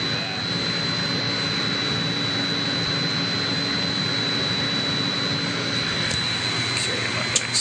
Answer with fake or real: real